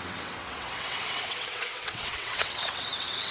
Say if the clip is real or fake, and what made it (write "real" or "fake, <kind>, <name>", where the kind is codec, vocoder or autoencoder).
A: fake, vocoder, WaveNeXt